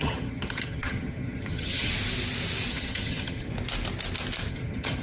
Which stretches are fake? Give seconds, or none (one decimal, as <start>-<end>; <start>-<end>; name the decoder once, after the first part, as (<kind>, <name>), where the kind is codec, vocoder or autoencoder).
0.0-1.9 (vocoder, HiFi-GAN); 2.7-3.5; 4.5-5.0